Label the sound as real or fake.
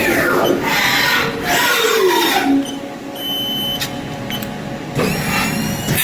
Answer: real